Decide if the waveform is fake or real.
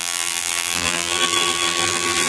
fake